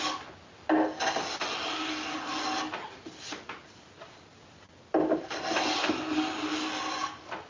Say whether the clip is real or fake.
real